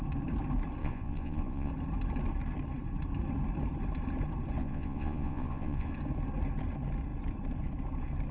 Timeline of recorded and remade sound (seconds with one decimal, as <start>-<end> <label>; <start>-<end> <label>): 0.0-0.8 recorded; 0.8-1.7 remade; 1.7-4.6 recorded; 4.6-5.9 remade; 5.9-8.3 recorded

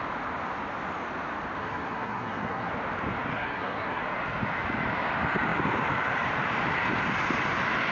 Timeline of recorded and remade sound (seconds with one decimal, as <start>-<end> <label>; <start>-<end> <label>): 0.0-1.6 recorded; 1.6-2.7 remade; 2.7-3.3 recorded; 3.3-4.0 remade; 4.0-7.9 recorded

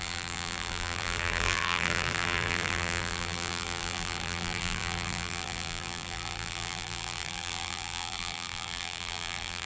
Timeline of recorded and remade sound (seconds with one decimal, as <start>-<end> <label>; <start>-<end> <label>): 0.0-9.7 remade

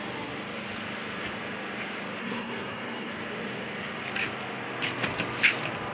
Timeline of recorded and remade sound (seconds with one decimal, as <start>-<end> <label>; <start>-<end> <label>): 0.0-2.2 recorded; 2.2-3.1 remade; 3.1-5.9 recorded